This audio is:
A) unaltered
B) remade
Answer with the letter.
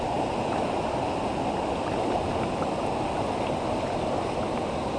A